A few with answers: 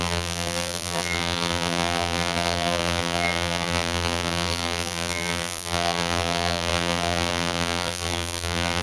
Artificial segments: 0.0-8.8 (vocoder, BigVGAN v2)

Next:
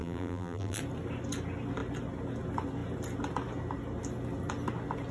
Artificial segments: 0.0-0.8 (vocoder, BigVGAN v2)